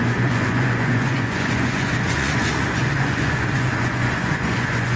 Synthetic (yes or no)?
yes